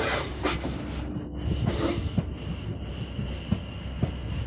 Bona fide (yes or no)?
yes